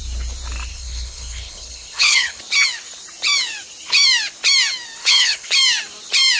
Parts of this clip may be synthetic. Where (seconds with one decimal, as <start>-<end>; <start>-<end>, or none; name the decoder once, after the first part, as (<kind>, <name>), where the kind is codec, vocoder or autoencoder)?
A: 0.7-2.4 (codec, HILCodec); 5.0-5.5